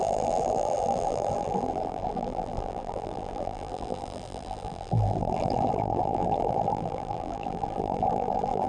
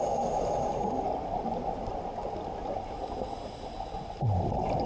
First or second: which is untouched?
second